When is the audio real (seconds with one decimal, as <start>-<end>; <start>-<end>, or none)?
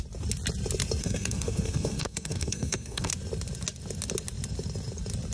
0.0-1.0; 3.1-5.3